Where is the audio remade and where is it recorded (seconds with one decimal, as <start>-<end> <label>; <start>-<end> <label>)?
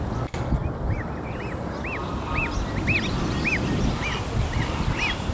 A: 0.0-5.3 recorded